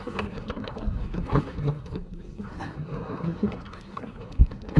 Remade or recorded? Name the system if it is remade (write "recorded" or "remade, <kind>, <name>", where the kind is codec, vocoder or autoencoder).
remade, codec, SNAC